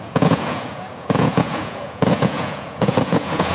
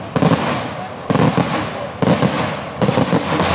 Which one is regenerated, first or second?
first